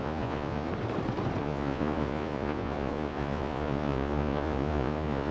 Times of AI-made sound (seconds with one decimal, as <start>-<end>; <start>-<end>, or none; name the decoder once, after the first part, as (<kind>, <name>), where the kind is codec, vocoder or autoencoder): 0.0-0.7 (vocoder, Vocos); 1.4-5.3